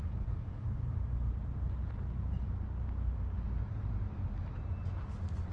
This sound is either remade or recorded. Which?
recorded